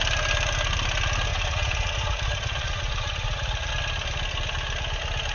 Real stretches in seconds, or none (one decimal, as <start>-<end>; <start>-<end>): 0.0-1.3; 3.7-5.3